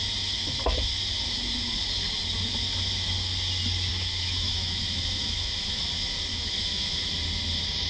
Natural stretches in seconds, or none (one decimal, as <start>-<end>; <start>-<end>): 0.0-3.9; 5.8-6.3; 7.1-7.9